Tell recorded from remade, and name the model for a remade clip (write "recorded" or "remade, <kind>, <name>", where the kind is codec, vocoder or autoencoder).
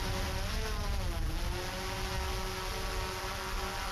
recorded